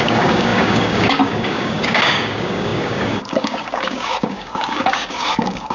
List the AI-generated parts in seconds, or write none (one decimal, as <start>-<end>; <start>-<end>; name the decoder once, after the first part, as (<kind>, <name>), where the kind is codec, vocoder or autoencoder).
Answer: 0.0-5.7 (codec, DAC)